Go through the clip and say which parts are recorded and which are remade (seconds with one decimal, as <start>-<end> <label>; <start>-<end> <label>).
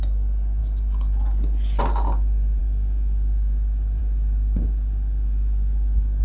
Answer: 0.0-6.2 recorded